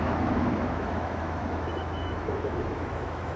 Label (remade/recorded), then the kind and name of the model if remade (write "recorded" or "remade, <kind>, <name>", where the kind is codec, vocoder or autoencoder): remade, autoencoder, DAC-VAE